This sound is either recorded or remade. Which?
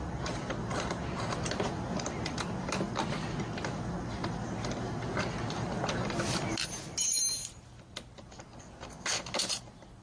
recorded